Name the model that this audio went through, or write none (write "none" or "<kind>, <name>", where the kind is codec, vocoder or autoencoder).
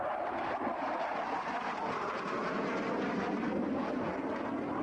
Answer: none